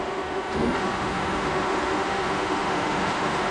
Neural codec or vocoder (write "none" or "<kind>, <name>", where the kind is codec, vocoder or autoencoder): autoencoder, DAC-VAE